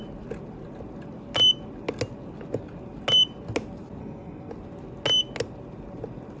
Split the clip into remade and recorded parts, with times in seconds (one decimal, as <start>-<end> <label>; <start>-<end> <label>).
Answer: 0.0-4.0 recorded; 4.0-4.5 remade; 4.5-6.4 recorded